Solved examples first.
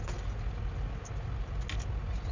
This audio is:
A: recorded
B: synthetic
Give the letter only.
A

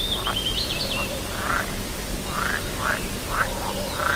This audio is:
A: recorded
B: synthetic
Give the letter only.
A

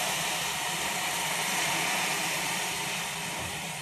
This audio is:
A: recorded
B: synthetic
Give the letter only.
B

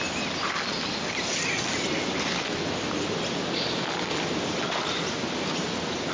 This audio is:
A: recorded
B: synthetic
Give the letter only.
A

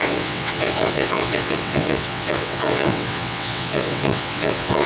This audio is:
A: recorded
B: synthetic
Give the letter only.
B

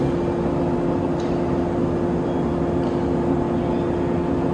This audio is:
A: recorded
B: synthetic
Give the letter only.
A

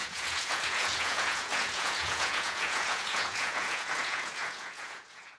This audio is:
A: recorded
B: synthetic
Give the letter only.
B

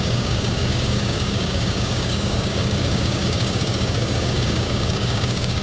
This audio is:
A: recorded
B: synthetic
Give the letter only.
B